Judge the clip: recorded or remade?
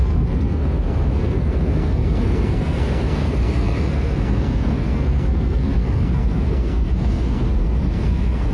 remade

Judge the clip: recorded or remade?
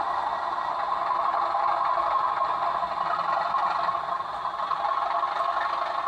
recorded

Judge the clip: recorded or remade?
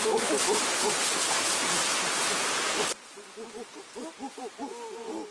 recorded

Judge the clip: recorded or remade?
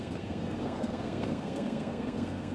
remade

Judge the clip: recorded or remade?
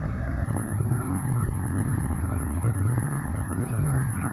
remade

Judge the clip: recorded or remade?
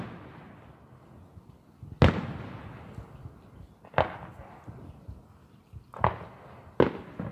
recorded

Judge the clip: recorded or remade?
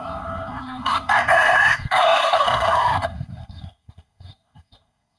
remade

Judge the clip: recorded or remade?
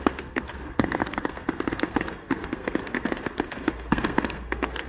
remade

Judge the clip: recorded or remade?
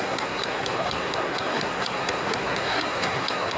remade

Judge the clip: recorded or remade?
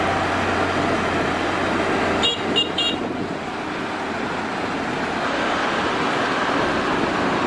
recorded